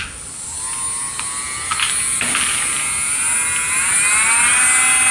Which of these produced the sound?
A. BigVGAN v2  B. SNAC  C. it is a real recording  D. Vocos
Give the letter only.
C